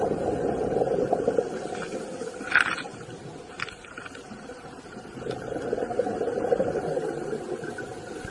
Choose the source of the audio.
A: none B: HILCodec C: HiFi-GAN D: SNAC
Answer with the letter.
A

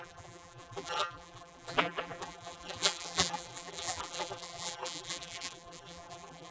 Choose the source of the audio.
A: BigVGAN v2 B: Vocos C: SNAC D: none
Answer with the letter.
A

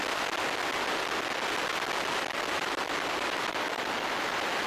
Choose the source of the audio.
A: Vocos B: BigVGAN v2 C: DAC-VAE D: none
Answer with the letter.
D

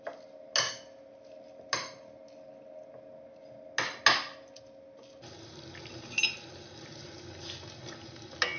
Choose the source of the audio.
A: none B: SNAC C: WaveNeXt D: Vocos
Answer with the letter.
A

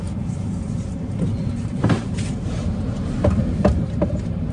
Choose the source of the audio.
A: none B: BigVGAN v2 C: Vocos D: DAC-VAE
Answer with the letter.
B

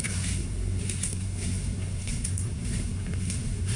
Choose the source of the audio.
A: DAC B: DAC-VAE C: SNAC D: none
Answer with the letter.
C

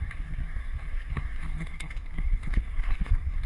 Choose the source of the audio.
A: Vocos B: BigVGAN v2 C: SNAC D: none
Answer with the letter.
C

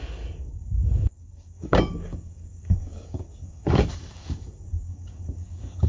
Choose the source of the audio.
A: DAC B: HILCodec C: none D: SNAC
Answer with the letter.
A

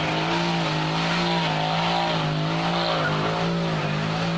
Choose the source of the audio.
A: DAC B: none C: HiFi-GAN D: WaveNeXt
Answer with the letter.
B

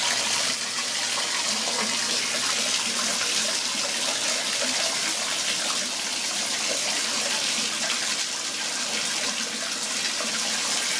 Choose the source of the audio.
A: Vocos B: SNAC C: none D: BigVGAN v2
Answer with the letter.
C